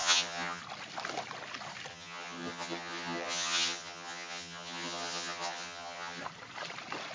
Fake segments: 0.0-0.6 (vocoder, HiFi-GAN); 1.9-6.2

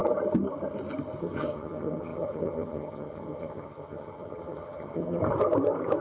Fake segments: 1.2-5.2 (vocoder, HiFi-GAN)

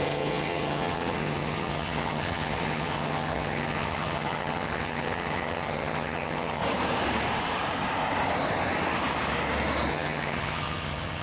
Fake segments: 0.0-6.6 (vocoder, HiFi-GAN); 9.9-11.2

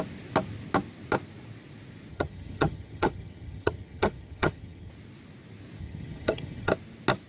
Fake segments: 2.1-4.9 (vocoder, HiFi-GAN); 5.8-6.7

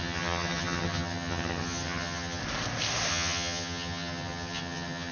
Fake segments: 0.0-2.4 (vocoder, HiFi-GAN); 3.1-5.1